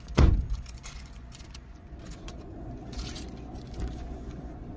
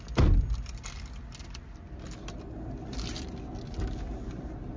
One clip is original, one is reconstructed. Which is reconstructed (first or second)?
first